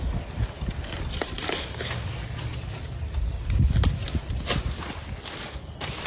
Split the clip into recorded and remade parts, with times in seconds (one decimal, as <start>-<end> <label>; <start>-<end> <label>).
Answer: 0.0-6.1 recorded